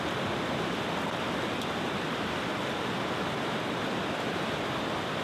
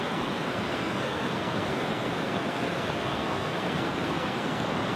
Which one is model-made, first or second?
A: second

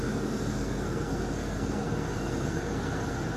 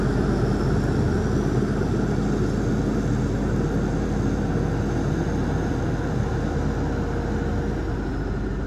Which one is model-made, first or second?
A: first